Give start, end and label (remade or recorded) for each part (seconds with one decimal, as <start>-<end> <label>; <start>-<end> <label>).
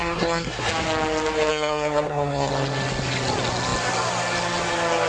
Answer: 0.0-0.7 remade; 0.7-1.5 recorded; 1.5-2.5 remade; 2.5-5.1 recorded